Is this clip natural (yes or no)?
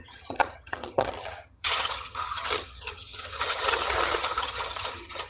no